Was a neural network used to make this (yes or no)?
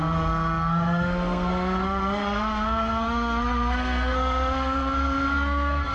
yes